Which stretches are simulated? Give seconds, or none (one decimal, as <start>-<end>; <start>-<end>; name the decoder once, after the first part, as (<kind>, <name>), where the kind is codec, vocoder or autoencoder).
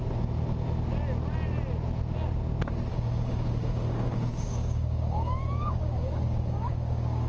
2.9-7.3 (codec, DAC)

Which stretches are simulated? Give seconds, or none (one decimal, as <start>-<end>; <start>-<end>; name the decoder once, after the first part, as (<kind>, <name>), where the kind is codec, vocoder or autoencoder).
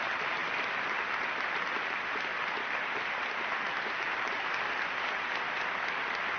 0.4-1.0 (vocoder, BigVGAN v2)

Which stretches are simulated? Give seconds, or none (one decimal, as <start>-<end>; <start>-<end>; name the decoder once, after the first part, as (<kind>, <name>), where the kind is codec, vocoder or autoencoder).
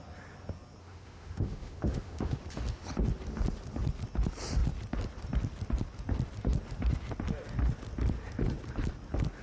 0.8-2.4 (autoencoder, DAC-VAE)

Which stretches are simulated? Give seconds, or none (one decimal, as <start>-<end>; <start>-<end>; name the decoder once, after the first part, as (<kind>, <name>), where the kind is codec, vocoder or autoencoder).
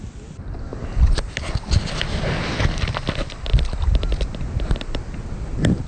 none